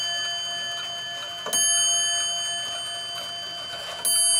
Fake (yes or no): no